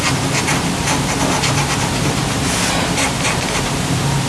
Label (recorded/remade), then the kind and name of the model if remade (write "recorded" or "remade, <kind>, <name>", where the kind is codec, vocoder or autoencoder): remade, vocoder, BigVGAN v2